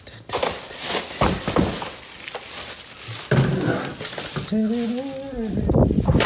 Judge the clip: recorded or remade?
recorded